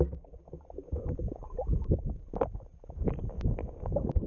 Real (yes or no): yes